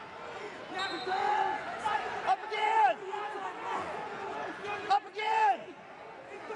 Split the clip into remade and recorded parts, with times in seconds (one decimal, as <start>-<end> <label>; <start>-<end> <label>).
0.0-1.3 recorded; 1.3-2.0 remade; 2.0-2.4 recorded; 2.4-6.6 remade